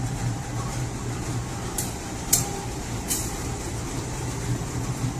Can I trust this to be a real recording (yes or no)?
no